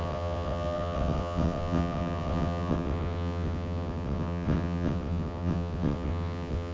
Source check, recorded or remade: remade